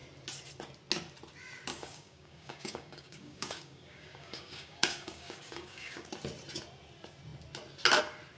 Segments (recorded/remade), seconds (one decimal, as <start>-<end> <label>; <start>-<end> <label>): 0.0-1.7 recorded; 1.7-6.1 remade; 6.1-8.4 recorded